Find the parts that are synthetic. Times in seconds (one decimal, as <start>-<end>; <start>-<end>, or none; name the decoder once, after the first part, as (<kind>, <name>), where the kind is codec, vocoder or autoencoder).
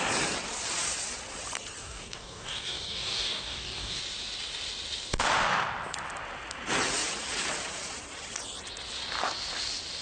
1.8-4.0 (codec, DAC)